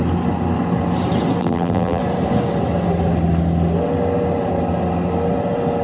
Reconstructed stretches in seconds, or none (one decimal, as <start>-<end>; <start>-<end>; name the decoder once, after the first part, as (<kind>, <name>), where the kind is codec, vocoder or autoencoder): 1.4-2.0 (vocoder, BigVGAN v2)